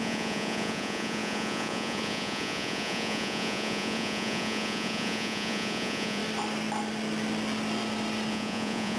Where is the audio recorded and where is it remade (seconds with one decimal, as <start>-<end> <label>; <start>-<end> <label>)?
0.0-6.2 remade; 6.2-8.3 recorded; 8.3-9.0 remade